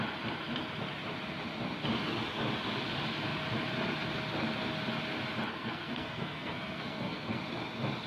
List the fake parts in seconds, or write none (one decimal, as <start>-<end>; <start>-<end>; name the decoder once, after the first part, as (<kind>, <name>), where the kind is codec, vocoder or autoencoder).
5.5-7.4 (codec, SNAC)